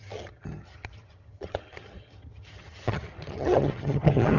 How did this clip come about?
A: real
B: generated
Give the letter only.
B